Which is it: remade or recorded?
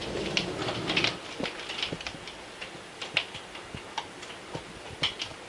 recorded